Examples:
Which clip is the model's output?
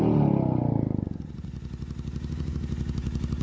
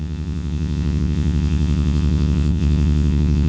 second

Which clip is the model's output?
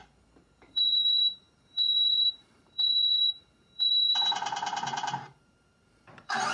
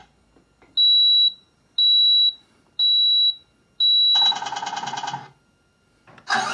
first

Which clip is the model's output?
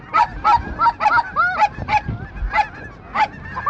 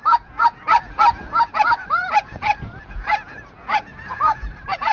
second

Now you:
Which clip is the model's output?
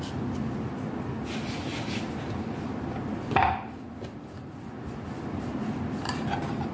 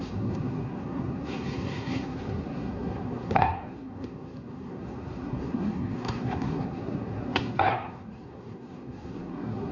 second